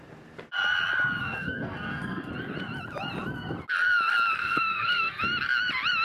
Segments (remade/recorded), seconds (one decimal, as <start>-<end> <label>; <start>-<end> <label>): 0.0-1.2 recorded; 1.2-2.3 remade; 2.3-4.4 recorded; 4.4-5.2 remade; 5.2-6.0 recorded